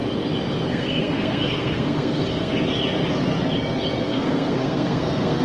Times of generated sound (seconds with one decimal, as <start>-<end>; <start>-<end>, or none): 0.7-2.5; 4.0-5.4